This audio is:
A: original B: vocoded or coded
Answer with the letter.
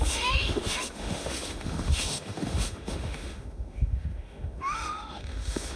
B